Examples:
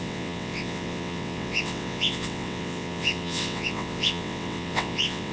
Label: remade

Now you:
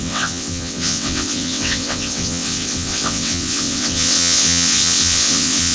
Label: remade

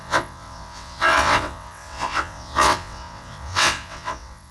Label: remade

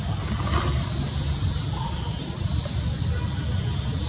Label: recorded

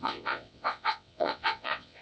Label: remade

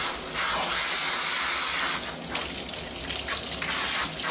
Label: recorded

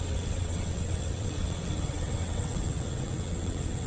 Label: remade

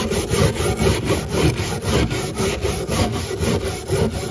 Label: recorded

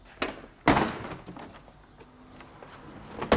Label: recorded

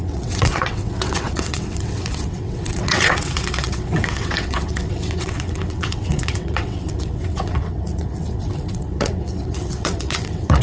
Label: remade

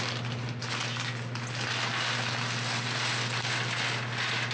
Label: recorded